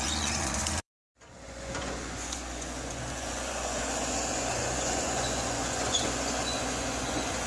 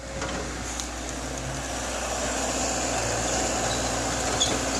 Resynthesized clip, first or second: first